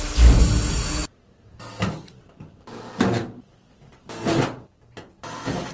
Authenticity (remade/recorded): recorded